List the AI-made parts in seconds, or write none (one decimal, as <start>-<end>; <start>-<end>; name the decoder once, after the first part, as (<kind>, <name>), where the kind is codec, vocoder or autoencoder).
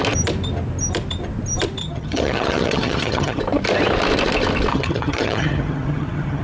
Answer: 1.8-3.4 (vocoder, HiFi-GAN); 4.7-6.4